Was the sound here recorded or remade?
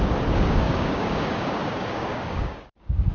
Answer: remade